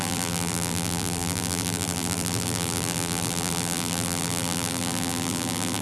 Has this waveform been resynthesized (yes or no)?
yes